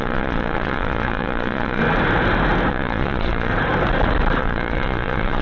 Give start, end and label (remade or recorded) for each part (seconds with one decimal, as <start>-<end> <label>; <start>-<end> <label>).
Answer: 0.0-1.8 remade; 1.8-2.7 recorded; 2.7-3.5 remade; 3.5-4.4 recorded; 4.4-5.4 remade